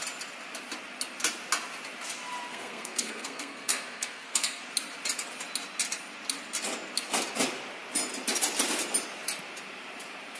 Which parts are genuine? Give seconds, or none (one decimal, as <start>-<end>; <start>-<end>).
0.0-2.5; 4.6-10.4

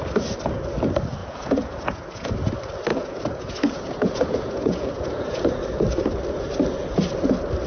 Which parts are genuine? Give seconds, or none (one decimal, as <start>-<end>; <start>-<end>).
0.0-1.2; 2.3-2.9; 5.4-7.7